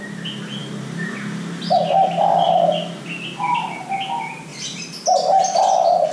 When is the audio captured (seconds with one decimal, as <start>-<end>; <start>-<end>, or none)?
0.0-6.1